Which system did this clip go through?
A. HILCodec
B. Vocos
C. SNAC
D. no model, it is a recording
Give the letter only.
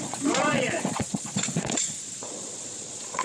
B